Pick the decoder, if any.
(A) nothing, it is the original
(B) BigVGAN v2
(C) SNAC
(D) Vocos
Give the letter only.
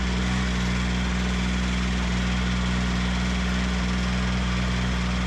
A